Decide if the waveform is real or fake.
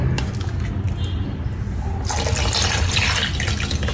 real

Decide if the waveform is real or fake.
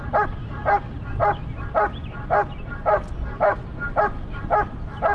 real